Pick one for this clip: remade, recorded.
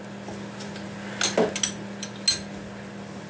recorded